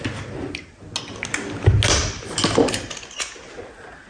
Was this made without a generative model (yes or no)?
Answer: yes